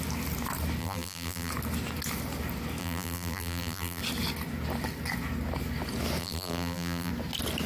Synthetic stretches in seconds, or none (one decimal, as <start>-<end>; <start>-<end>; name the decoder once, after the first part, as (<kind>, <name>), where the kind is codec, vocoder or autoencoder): 0.8-1.5 (vocoder, BigVGAN v2); 2.8-4.0; 6.2-7.1

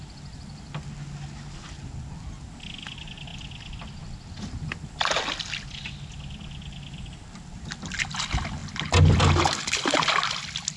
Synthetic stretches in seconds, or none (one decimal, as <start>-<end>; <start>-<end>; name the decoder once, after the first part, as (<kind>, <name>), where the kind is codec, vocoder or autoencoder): none